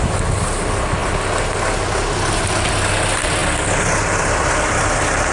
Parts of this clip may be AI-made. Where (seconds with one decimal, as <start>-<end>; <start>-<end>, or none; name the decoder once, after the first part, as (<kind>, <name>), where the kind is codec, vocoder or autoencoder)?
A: none